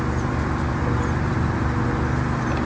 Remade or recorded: recorded